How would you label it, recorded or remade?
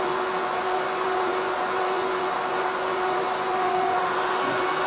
remade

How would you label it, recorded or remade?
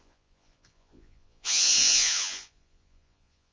remade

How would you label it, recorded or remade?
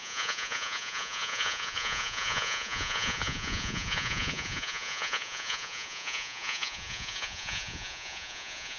remade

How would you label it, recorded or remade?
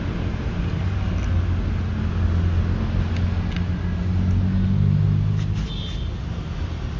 recorded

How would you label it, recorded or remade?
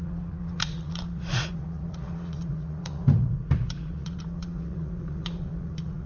remade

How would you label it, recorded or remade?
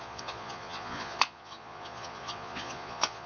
remade